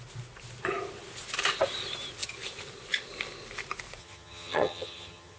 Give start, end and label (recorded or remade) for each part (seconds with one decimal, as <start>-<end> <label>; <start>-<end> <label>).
0.0-4.0 recorded; 4.0-5.4 remade